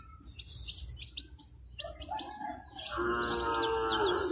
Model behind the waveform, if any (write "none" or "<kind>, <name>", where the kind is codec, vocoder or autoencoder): none